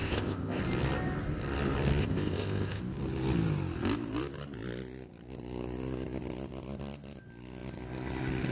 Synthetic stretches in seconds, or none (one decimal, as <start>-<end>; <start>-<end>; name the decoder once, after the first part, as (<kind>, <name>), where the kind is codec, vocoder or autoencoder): 0.0-0.6 (codec, ZipCodec); 2.0-2.8